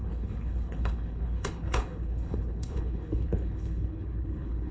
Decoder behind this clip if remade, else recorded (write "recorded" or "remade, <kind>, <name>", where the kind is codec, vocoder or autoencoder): remade, codec, HILCodec